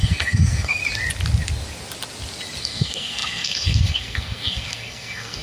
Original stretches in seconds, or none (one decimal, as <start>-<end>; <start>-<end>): 0.8-2.6

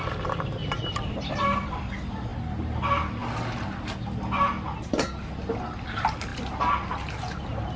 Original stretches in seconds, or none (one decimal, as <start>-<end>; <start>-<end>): 0.0-0.6; 1.8-2.3; 2.8-6.3; 6.9-7.8

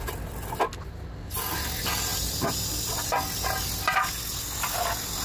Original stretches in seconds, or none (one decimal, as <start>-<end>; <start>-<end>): 0.0-2.1; 2.7-5.2

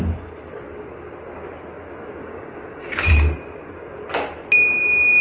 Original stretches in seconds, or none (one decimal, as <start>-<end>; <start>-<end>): 0.0-2.2; 3.1-5.2